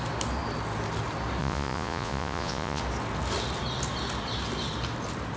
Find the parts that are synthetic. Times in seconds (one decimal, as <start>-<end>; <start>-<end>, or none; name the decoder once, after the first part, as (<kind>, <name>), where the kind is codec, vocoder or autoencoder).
1.4-2.8 (vocoder, Vocos)